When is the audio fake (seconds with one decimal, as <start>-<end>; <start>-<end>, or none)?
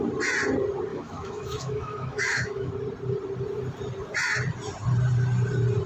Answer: 0.9-2.7